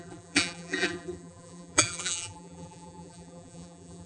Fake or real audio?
fake